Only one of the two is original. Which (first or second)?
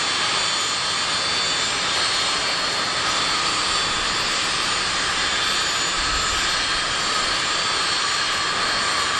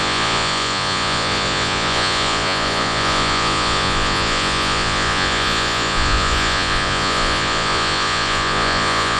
first